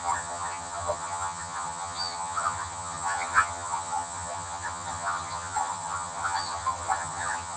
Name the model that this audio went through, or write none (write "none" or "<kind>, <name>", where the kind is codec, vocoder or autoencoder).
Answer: vocoder, HiFi-GAN